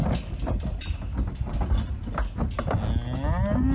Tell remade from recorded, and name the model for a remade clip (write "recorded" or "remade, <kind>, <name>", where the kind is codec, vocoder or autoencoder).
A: recorded